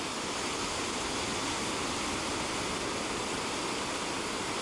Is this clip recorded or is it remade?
recorded